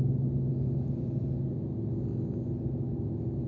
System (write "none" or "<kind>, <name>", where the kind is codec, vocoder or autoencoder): none